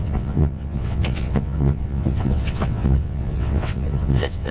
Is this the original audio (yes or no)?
no